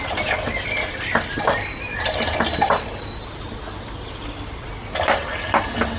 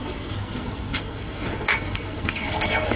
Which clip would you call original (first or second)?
first